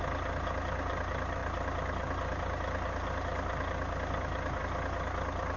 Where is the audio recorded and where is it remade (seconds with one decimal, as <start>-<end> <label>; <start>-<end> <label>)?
0.0-5.6 recorded